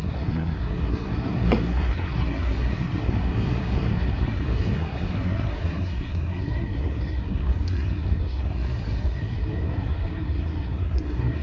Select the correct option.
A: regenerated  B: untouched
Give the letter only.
A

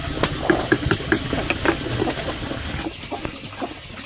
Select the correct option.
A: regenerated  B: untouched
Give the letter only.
B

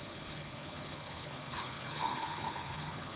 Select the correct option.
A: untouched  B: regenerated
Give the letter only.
B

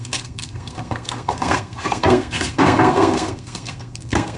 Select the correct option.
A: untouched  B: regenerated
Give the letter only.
B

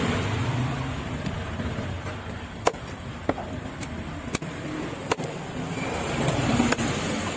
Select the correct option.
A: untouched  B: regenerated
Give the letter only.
B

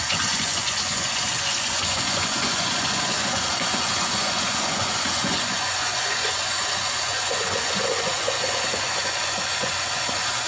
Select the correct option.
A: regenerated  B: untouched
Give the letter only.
A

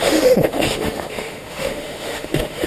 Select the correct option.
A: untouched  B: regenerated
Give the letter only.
B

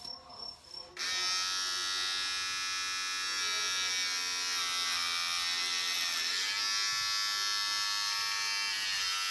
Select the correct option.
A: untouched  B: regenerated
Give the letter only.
A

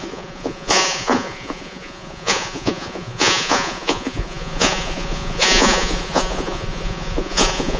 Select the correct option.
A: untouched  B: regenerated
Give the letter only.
B